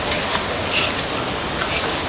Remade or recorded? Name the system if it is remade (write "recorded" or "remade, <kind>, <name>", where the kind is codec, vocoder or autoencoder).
recorded